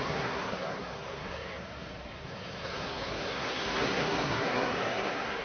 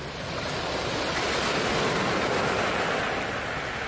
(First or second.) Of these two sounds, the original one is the second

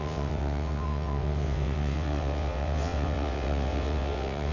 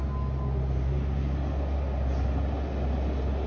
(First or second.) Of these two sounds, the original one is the second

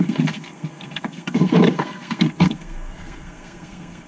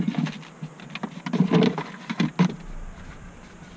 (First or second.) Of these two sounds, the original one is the second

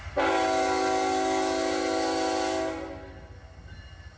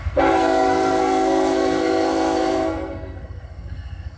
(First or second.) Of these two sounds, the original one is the first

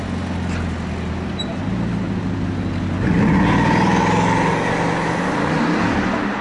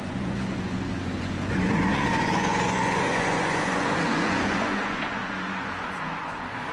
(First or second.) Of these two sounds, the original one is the first